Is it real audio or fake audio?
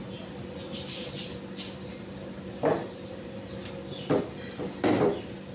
real